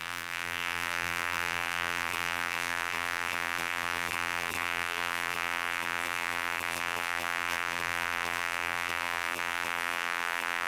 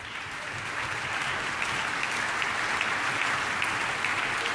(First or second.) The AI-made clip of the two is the first